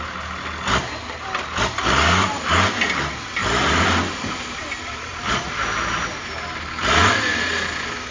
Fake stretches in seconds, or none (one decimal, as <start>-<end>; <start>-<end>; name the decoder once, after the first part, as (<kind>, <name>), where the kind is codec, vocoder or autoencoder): 3.4-6.7 (vocoder, BigVGAN v2)